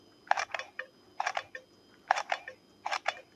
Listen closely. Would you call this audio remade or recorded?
recorded